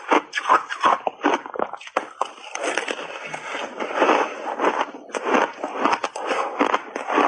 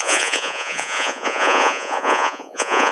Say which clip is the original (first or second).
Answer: first